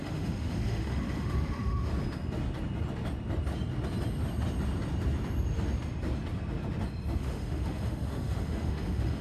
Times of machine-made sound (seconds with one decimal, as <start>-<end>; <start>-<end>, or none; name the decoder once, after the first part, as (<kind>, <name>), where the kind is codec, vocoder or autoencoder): 0.0-1.9 (autoencoder, DAC-VAE); 7.2-9.2